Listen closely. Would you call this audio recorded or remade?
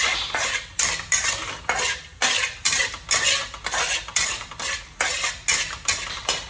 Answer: recorded